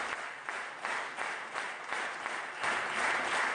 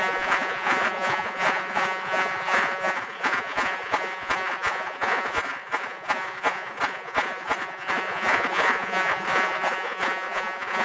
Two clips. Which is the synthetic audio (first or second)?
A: second